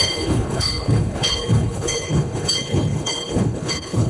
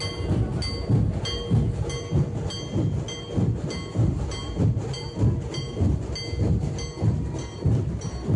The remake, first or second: first